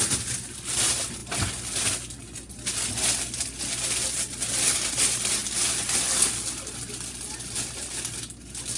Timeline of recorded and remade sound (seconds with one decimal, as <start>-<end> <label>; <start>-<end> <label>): 0.0-8.8 recorded